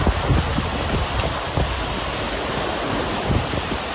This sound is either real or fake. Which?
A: real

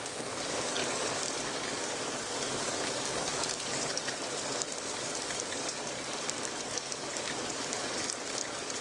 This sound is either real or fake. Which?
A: fake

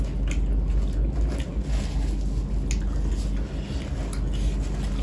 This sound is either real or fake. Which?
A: real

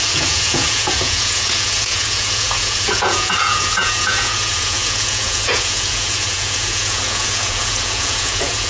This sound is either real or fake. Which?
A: fake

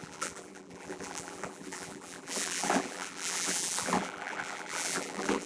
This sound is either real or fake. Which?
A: fake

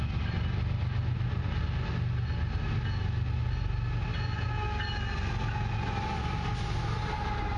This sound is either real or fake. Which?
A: real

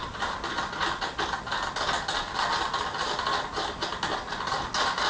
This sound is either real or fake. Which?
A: real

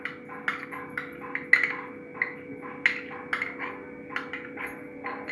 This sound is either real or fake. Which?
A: real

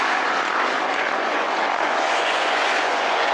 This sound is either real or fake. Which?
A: fake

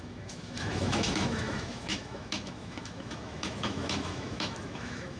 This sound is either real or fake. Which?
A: fake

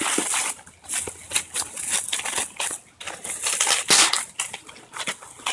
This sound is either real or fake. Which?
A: real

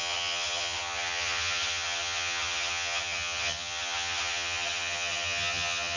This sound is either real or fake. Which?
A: fake